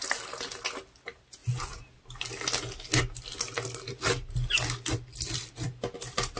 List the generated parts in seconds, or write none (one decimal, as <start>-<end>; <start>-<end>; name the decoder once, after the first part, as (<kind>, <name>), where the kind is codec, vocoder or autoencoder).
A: none